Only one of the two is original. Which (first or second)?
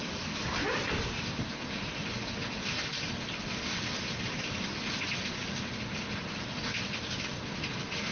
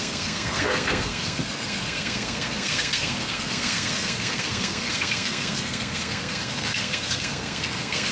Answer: first